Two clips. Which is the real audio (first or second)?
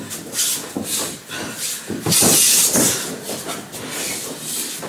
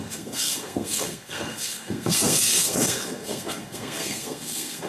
first